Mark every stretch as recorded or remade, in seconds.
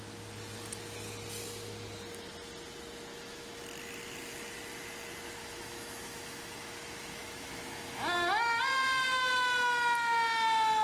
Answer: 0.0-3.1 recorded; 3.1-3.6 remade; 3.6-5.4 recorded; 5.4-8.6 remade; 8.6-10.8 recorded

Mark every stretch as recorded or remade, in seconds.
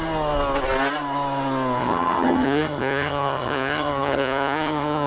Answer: 0.0-1.8 recorded; 1.8-5.1 remade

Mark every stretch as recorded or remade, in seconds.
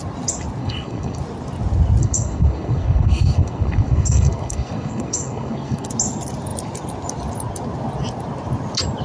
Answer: 0.0-0.6 recorded; 0.6-1.2 remade; 1.2-2.0 recorded; 2.0-5.9 remade; 5.9-9.0 recorded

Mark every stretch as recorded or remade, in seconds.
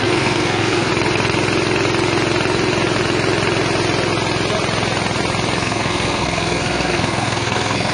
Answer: 0.0-0.9 remade; 0.9-5.6 recorded; 5.6-7.9 remade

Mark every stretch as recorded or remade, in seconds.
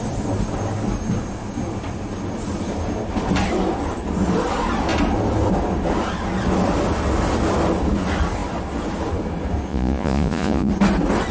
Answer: 0.0-9.7 recorded; 9.7-10.7 remade; 10.7-11.3 recorded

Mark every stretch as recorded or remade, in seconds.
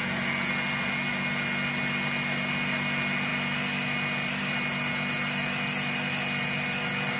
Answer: 0.0-7.2 recorded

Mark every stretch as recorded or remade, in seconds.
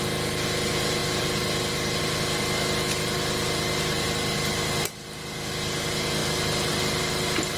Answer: 0.0-7.6 recorded